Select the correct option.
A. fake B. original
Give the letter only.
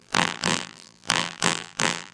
A